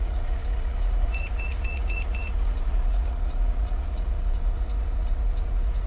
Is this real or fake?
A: fake